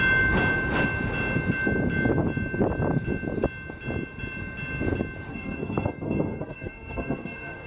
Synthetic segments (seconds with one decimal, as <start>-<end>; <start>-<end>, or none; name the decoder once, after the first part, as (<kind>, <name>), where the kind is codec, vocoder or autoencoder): 5.3-7.7 (codec, SNAC)